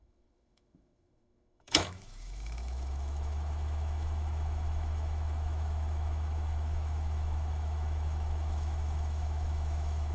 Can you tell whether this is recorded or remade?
remade